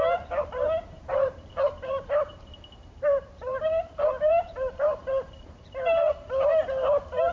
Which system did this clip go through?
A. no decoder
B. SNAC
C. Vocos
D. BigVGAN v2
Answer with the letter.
D